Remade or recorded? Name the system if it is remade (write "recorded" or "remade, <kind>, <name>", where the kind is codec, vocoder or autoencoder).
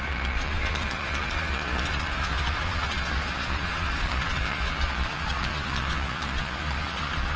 remade, vocoder, Vocos